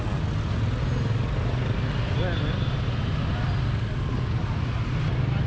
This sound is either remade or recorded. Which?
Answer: recorded